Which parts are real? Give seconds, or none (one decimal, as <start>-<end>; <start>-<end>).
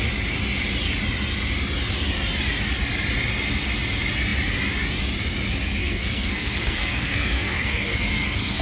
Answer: 0.0-5.8